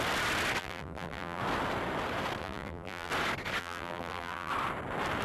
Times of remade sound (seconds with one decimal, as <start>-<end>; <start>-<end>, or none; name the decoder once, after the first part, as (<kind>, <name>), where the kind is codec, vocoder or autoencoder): 0.6-1.4 (vocoder, BigVGAN v2); 2.4-3.1; 3.6-4.5